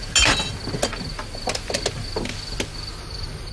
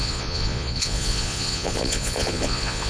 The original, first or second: first